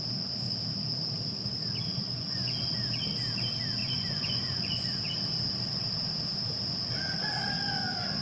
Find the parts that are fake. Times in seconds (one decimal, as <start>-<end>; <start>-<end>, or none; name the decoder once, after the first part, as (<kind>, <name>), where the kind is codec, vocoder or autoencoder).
1.9-2.5 (vocoder, Vocos); 3.8-5.1